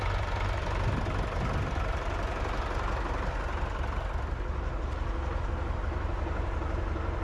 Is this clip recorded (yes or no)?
yes